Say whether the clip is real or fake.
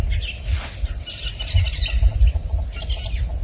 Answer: real